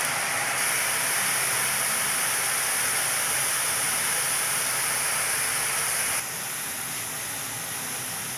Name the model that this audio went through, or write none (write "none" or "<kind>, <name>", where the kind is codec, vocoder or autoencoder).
none